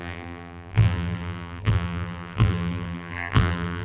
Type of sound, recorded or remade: remade